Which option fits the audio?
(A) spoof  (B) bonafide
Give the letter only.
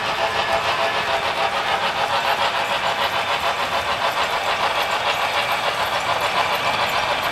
B